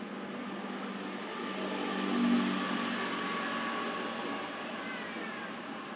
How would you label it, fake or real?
real